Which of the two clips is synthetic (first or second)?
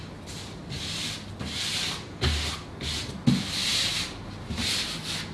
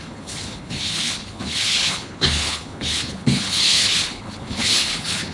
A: second